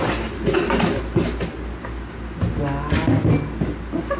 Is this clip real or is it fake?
real